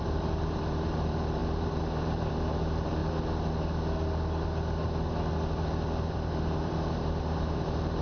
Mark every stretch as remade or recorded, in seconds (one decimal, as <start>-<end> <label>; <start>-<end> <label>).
0.0-3.0 remade; 3.0-5.5 recorded; 5.5-8.0 remade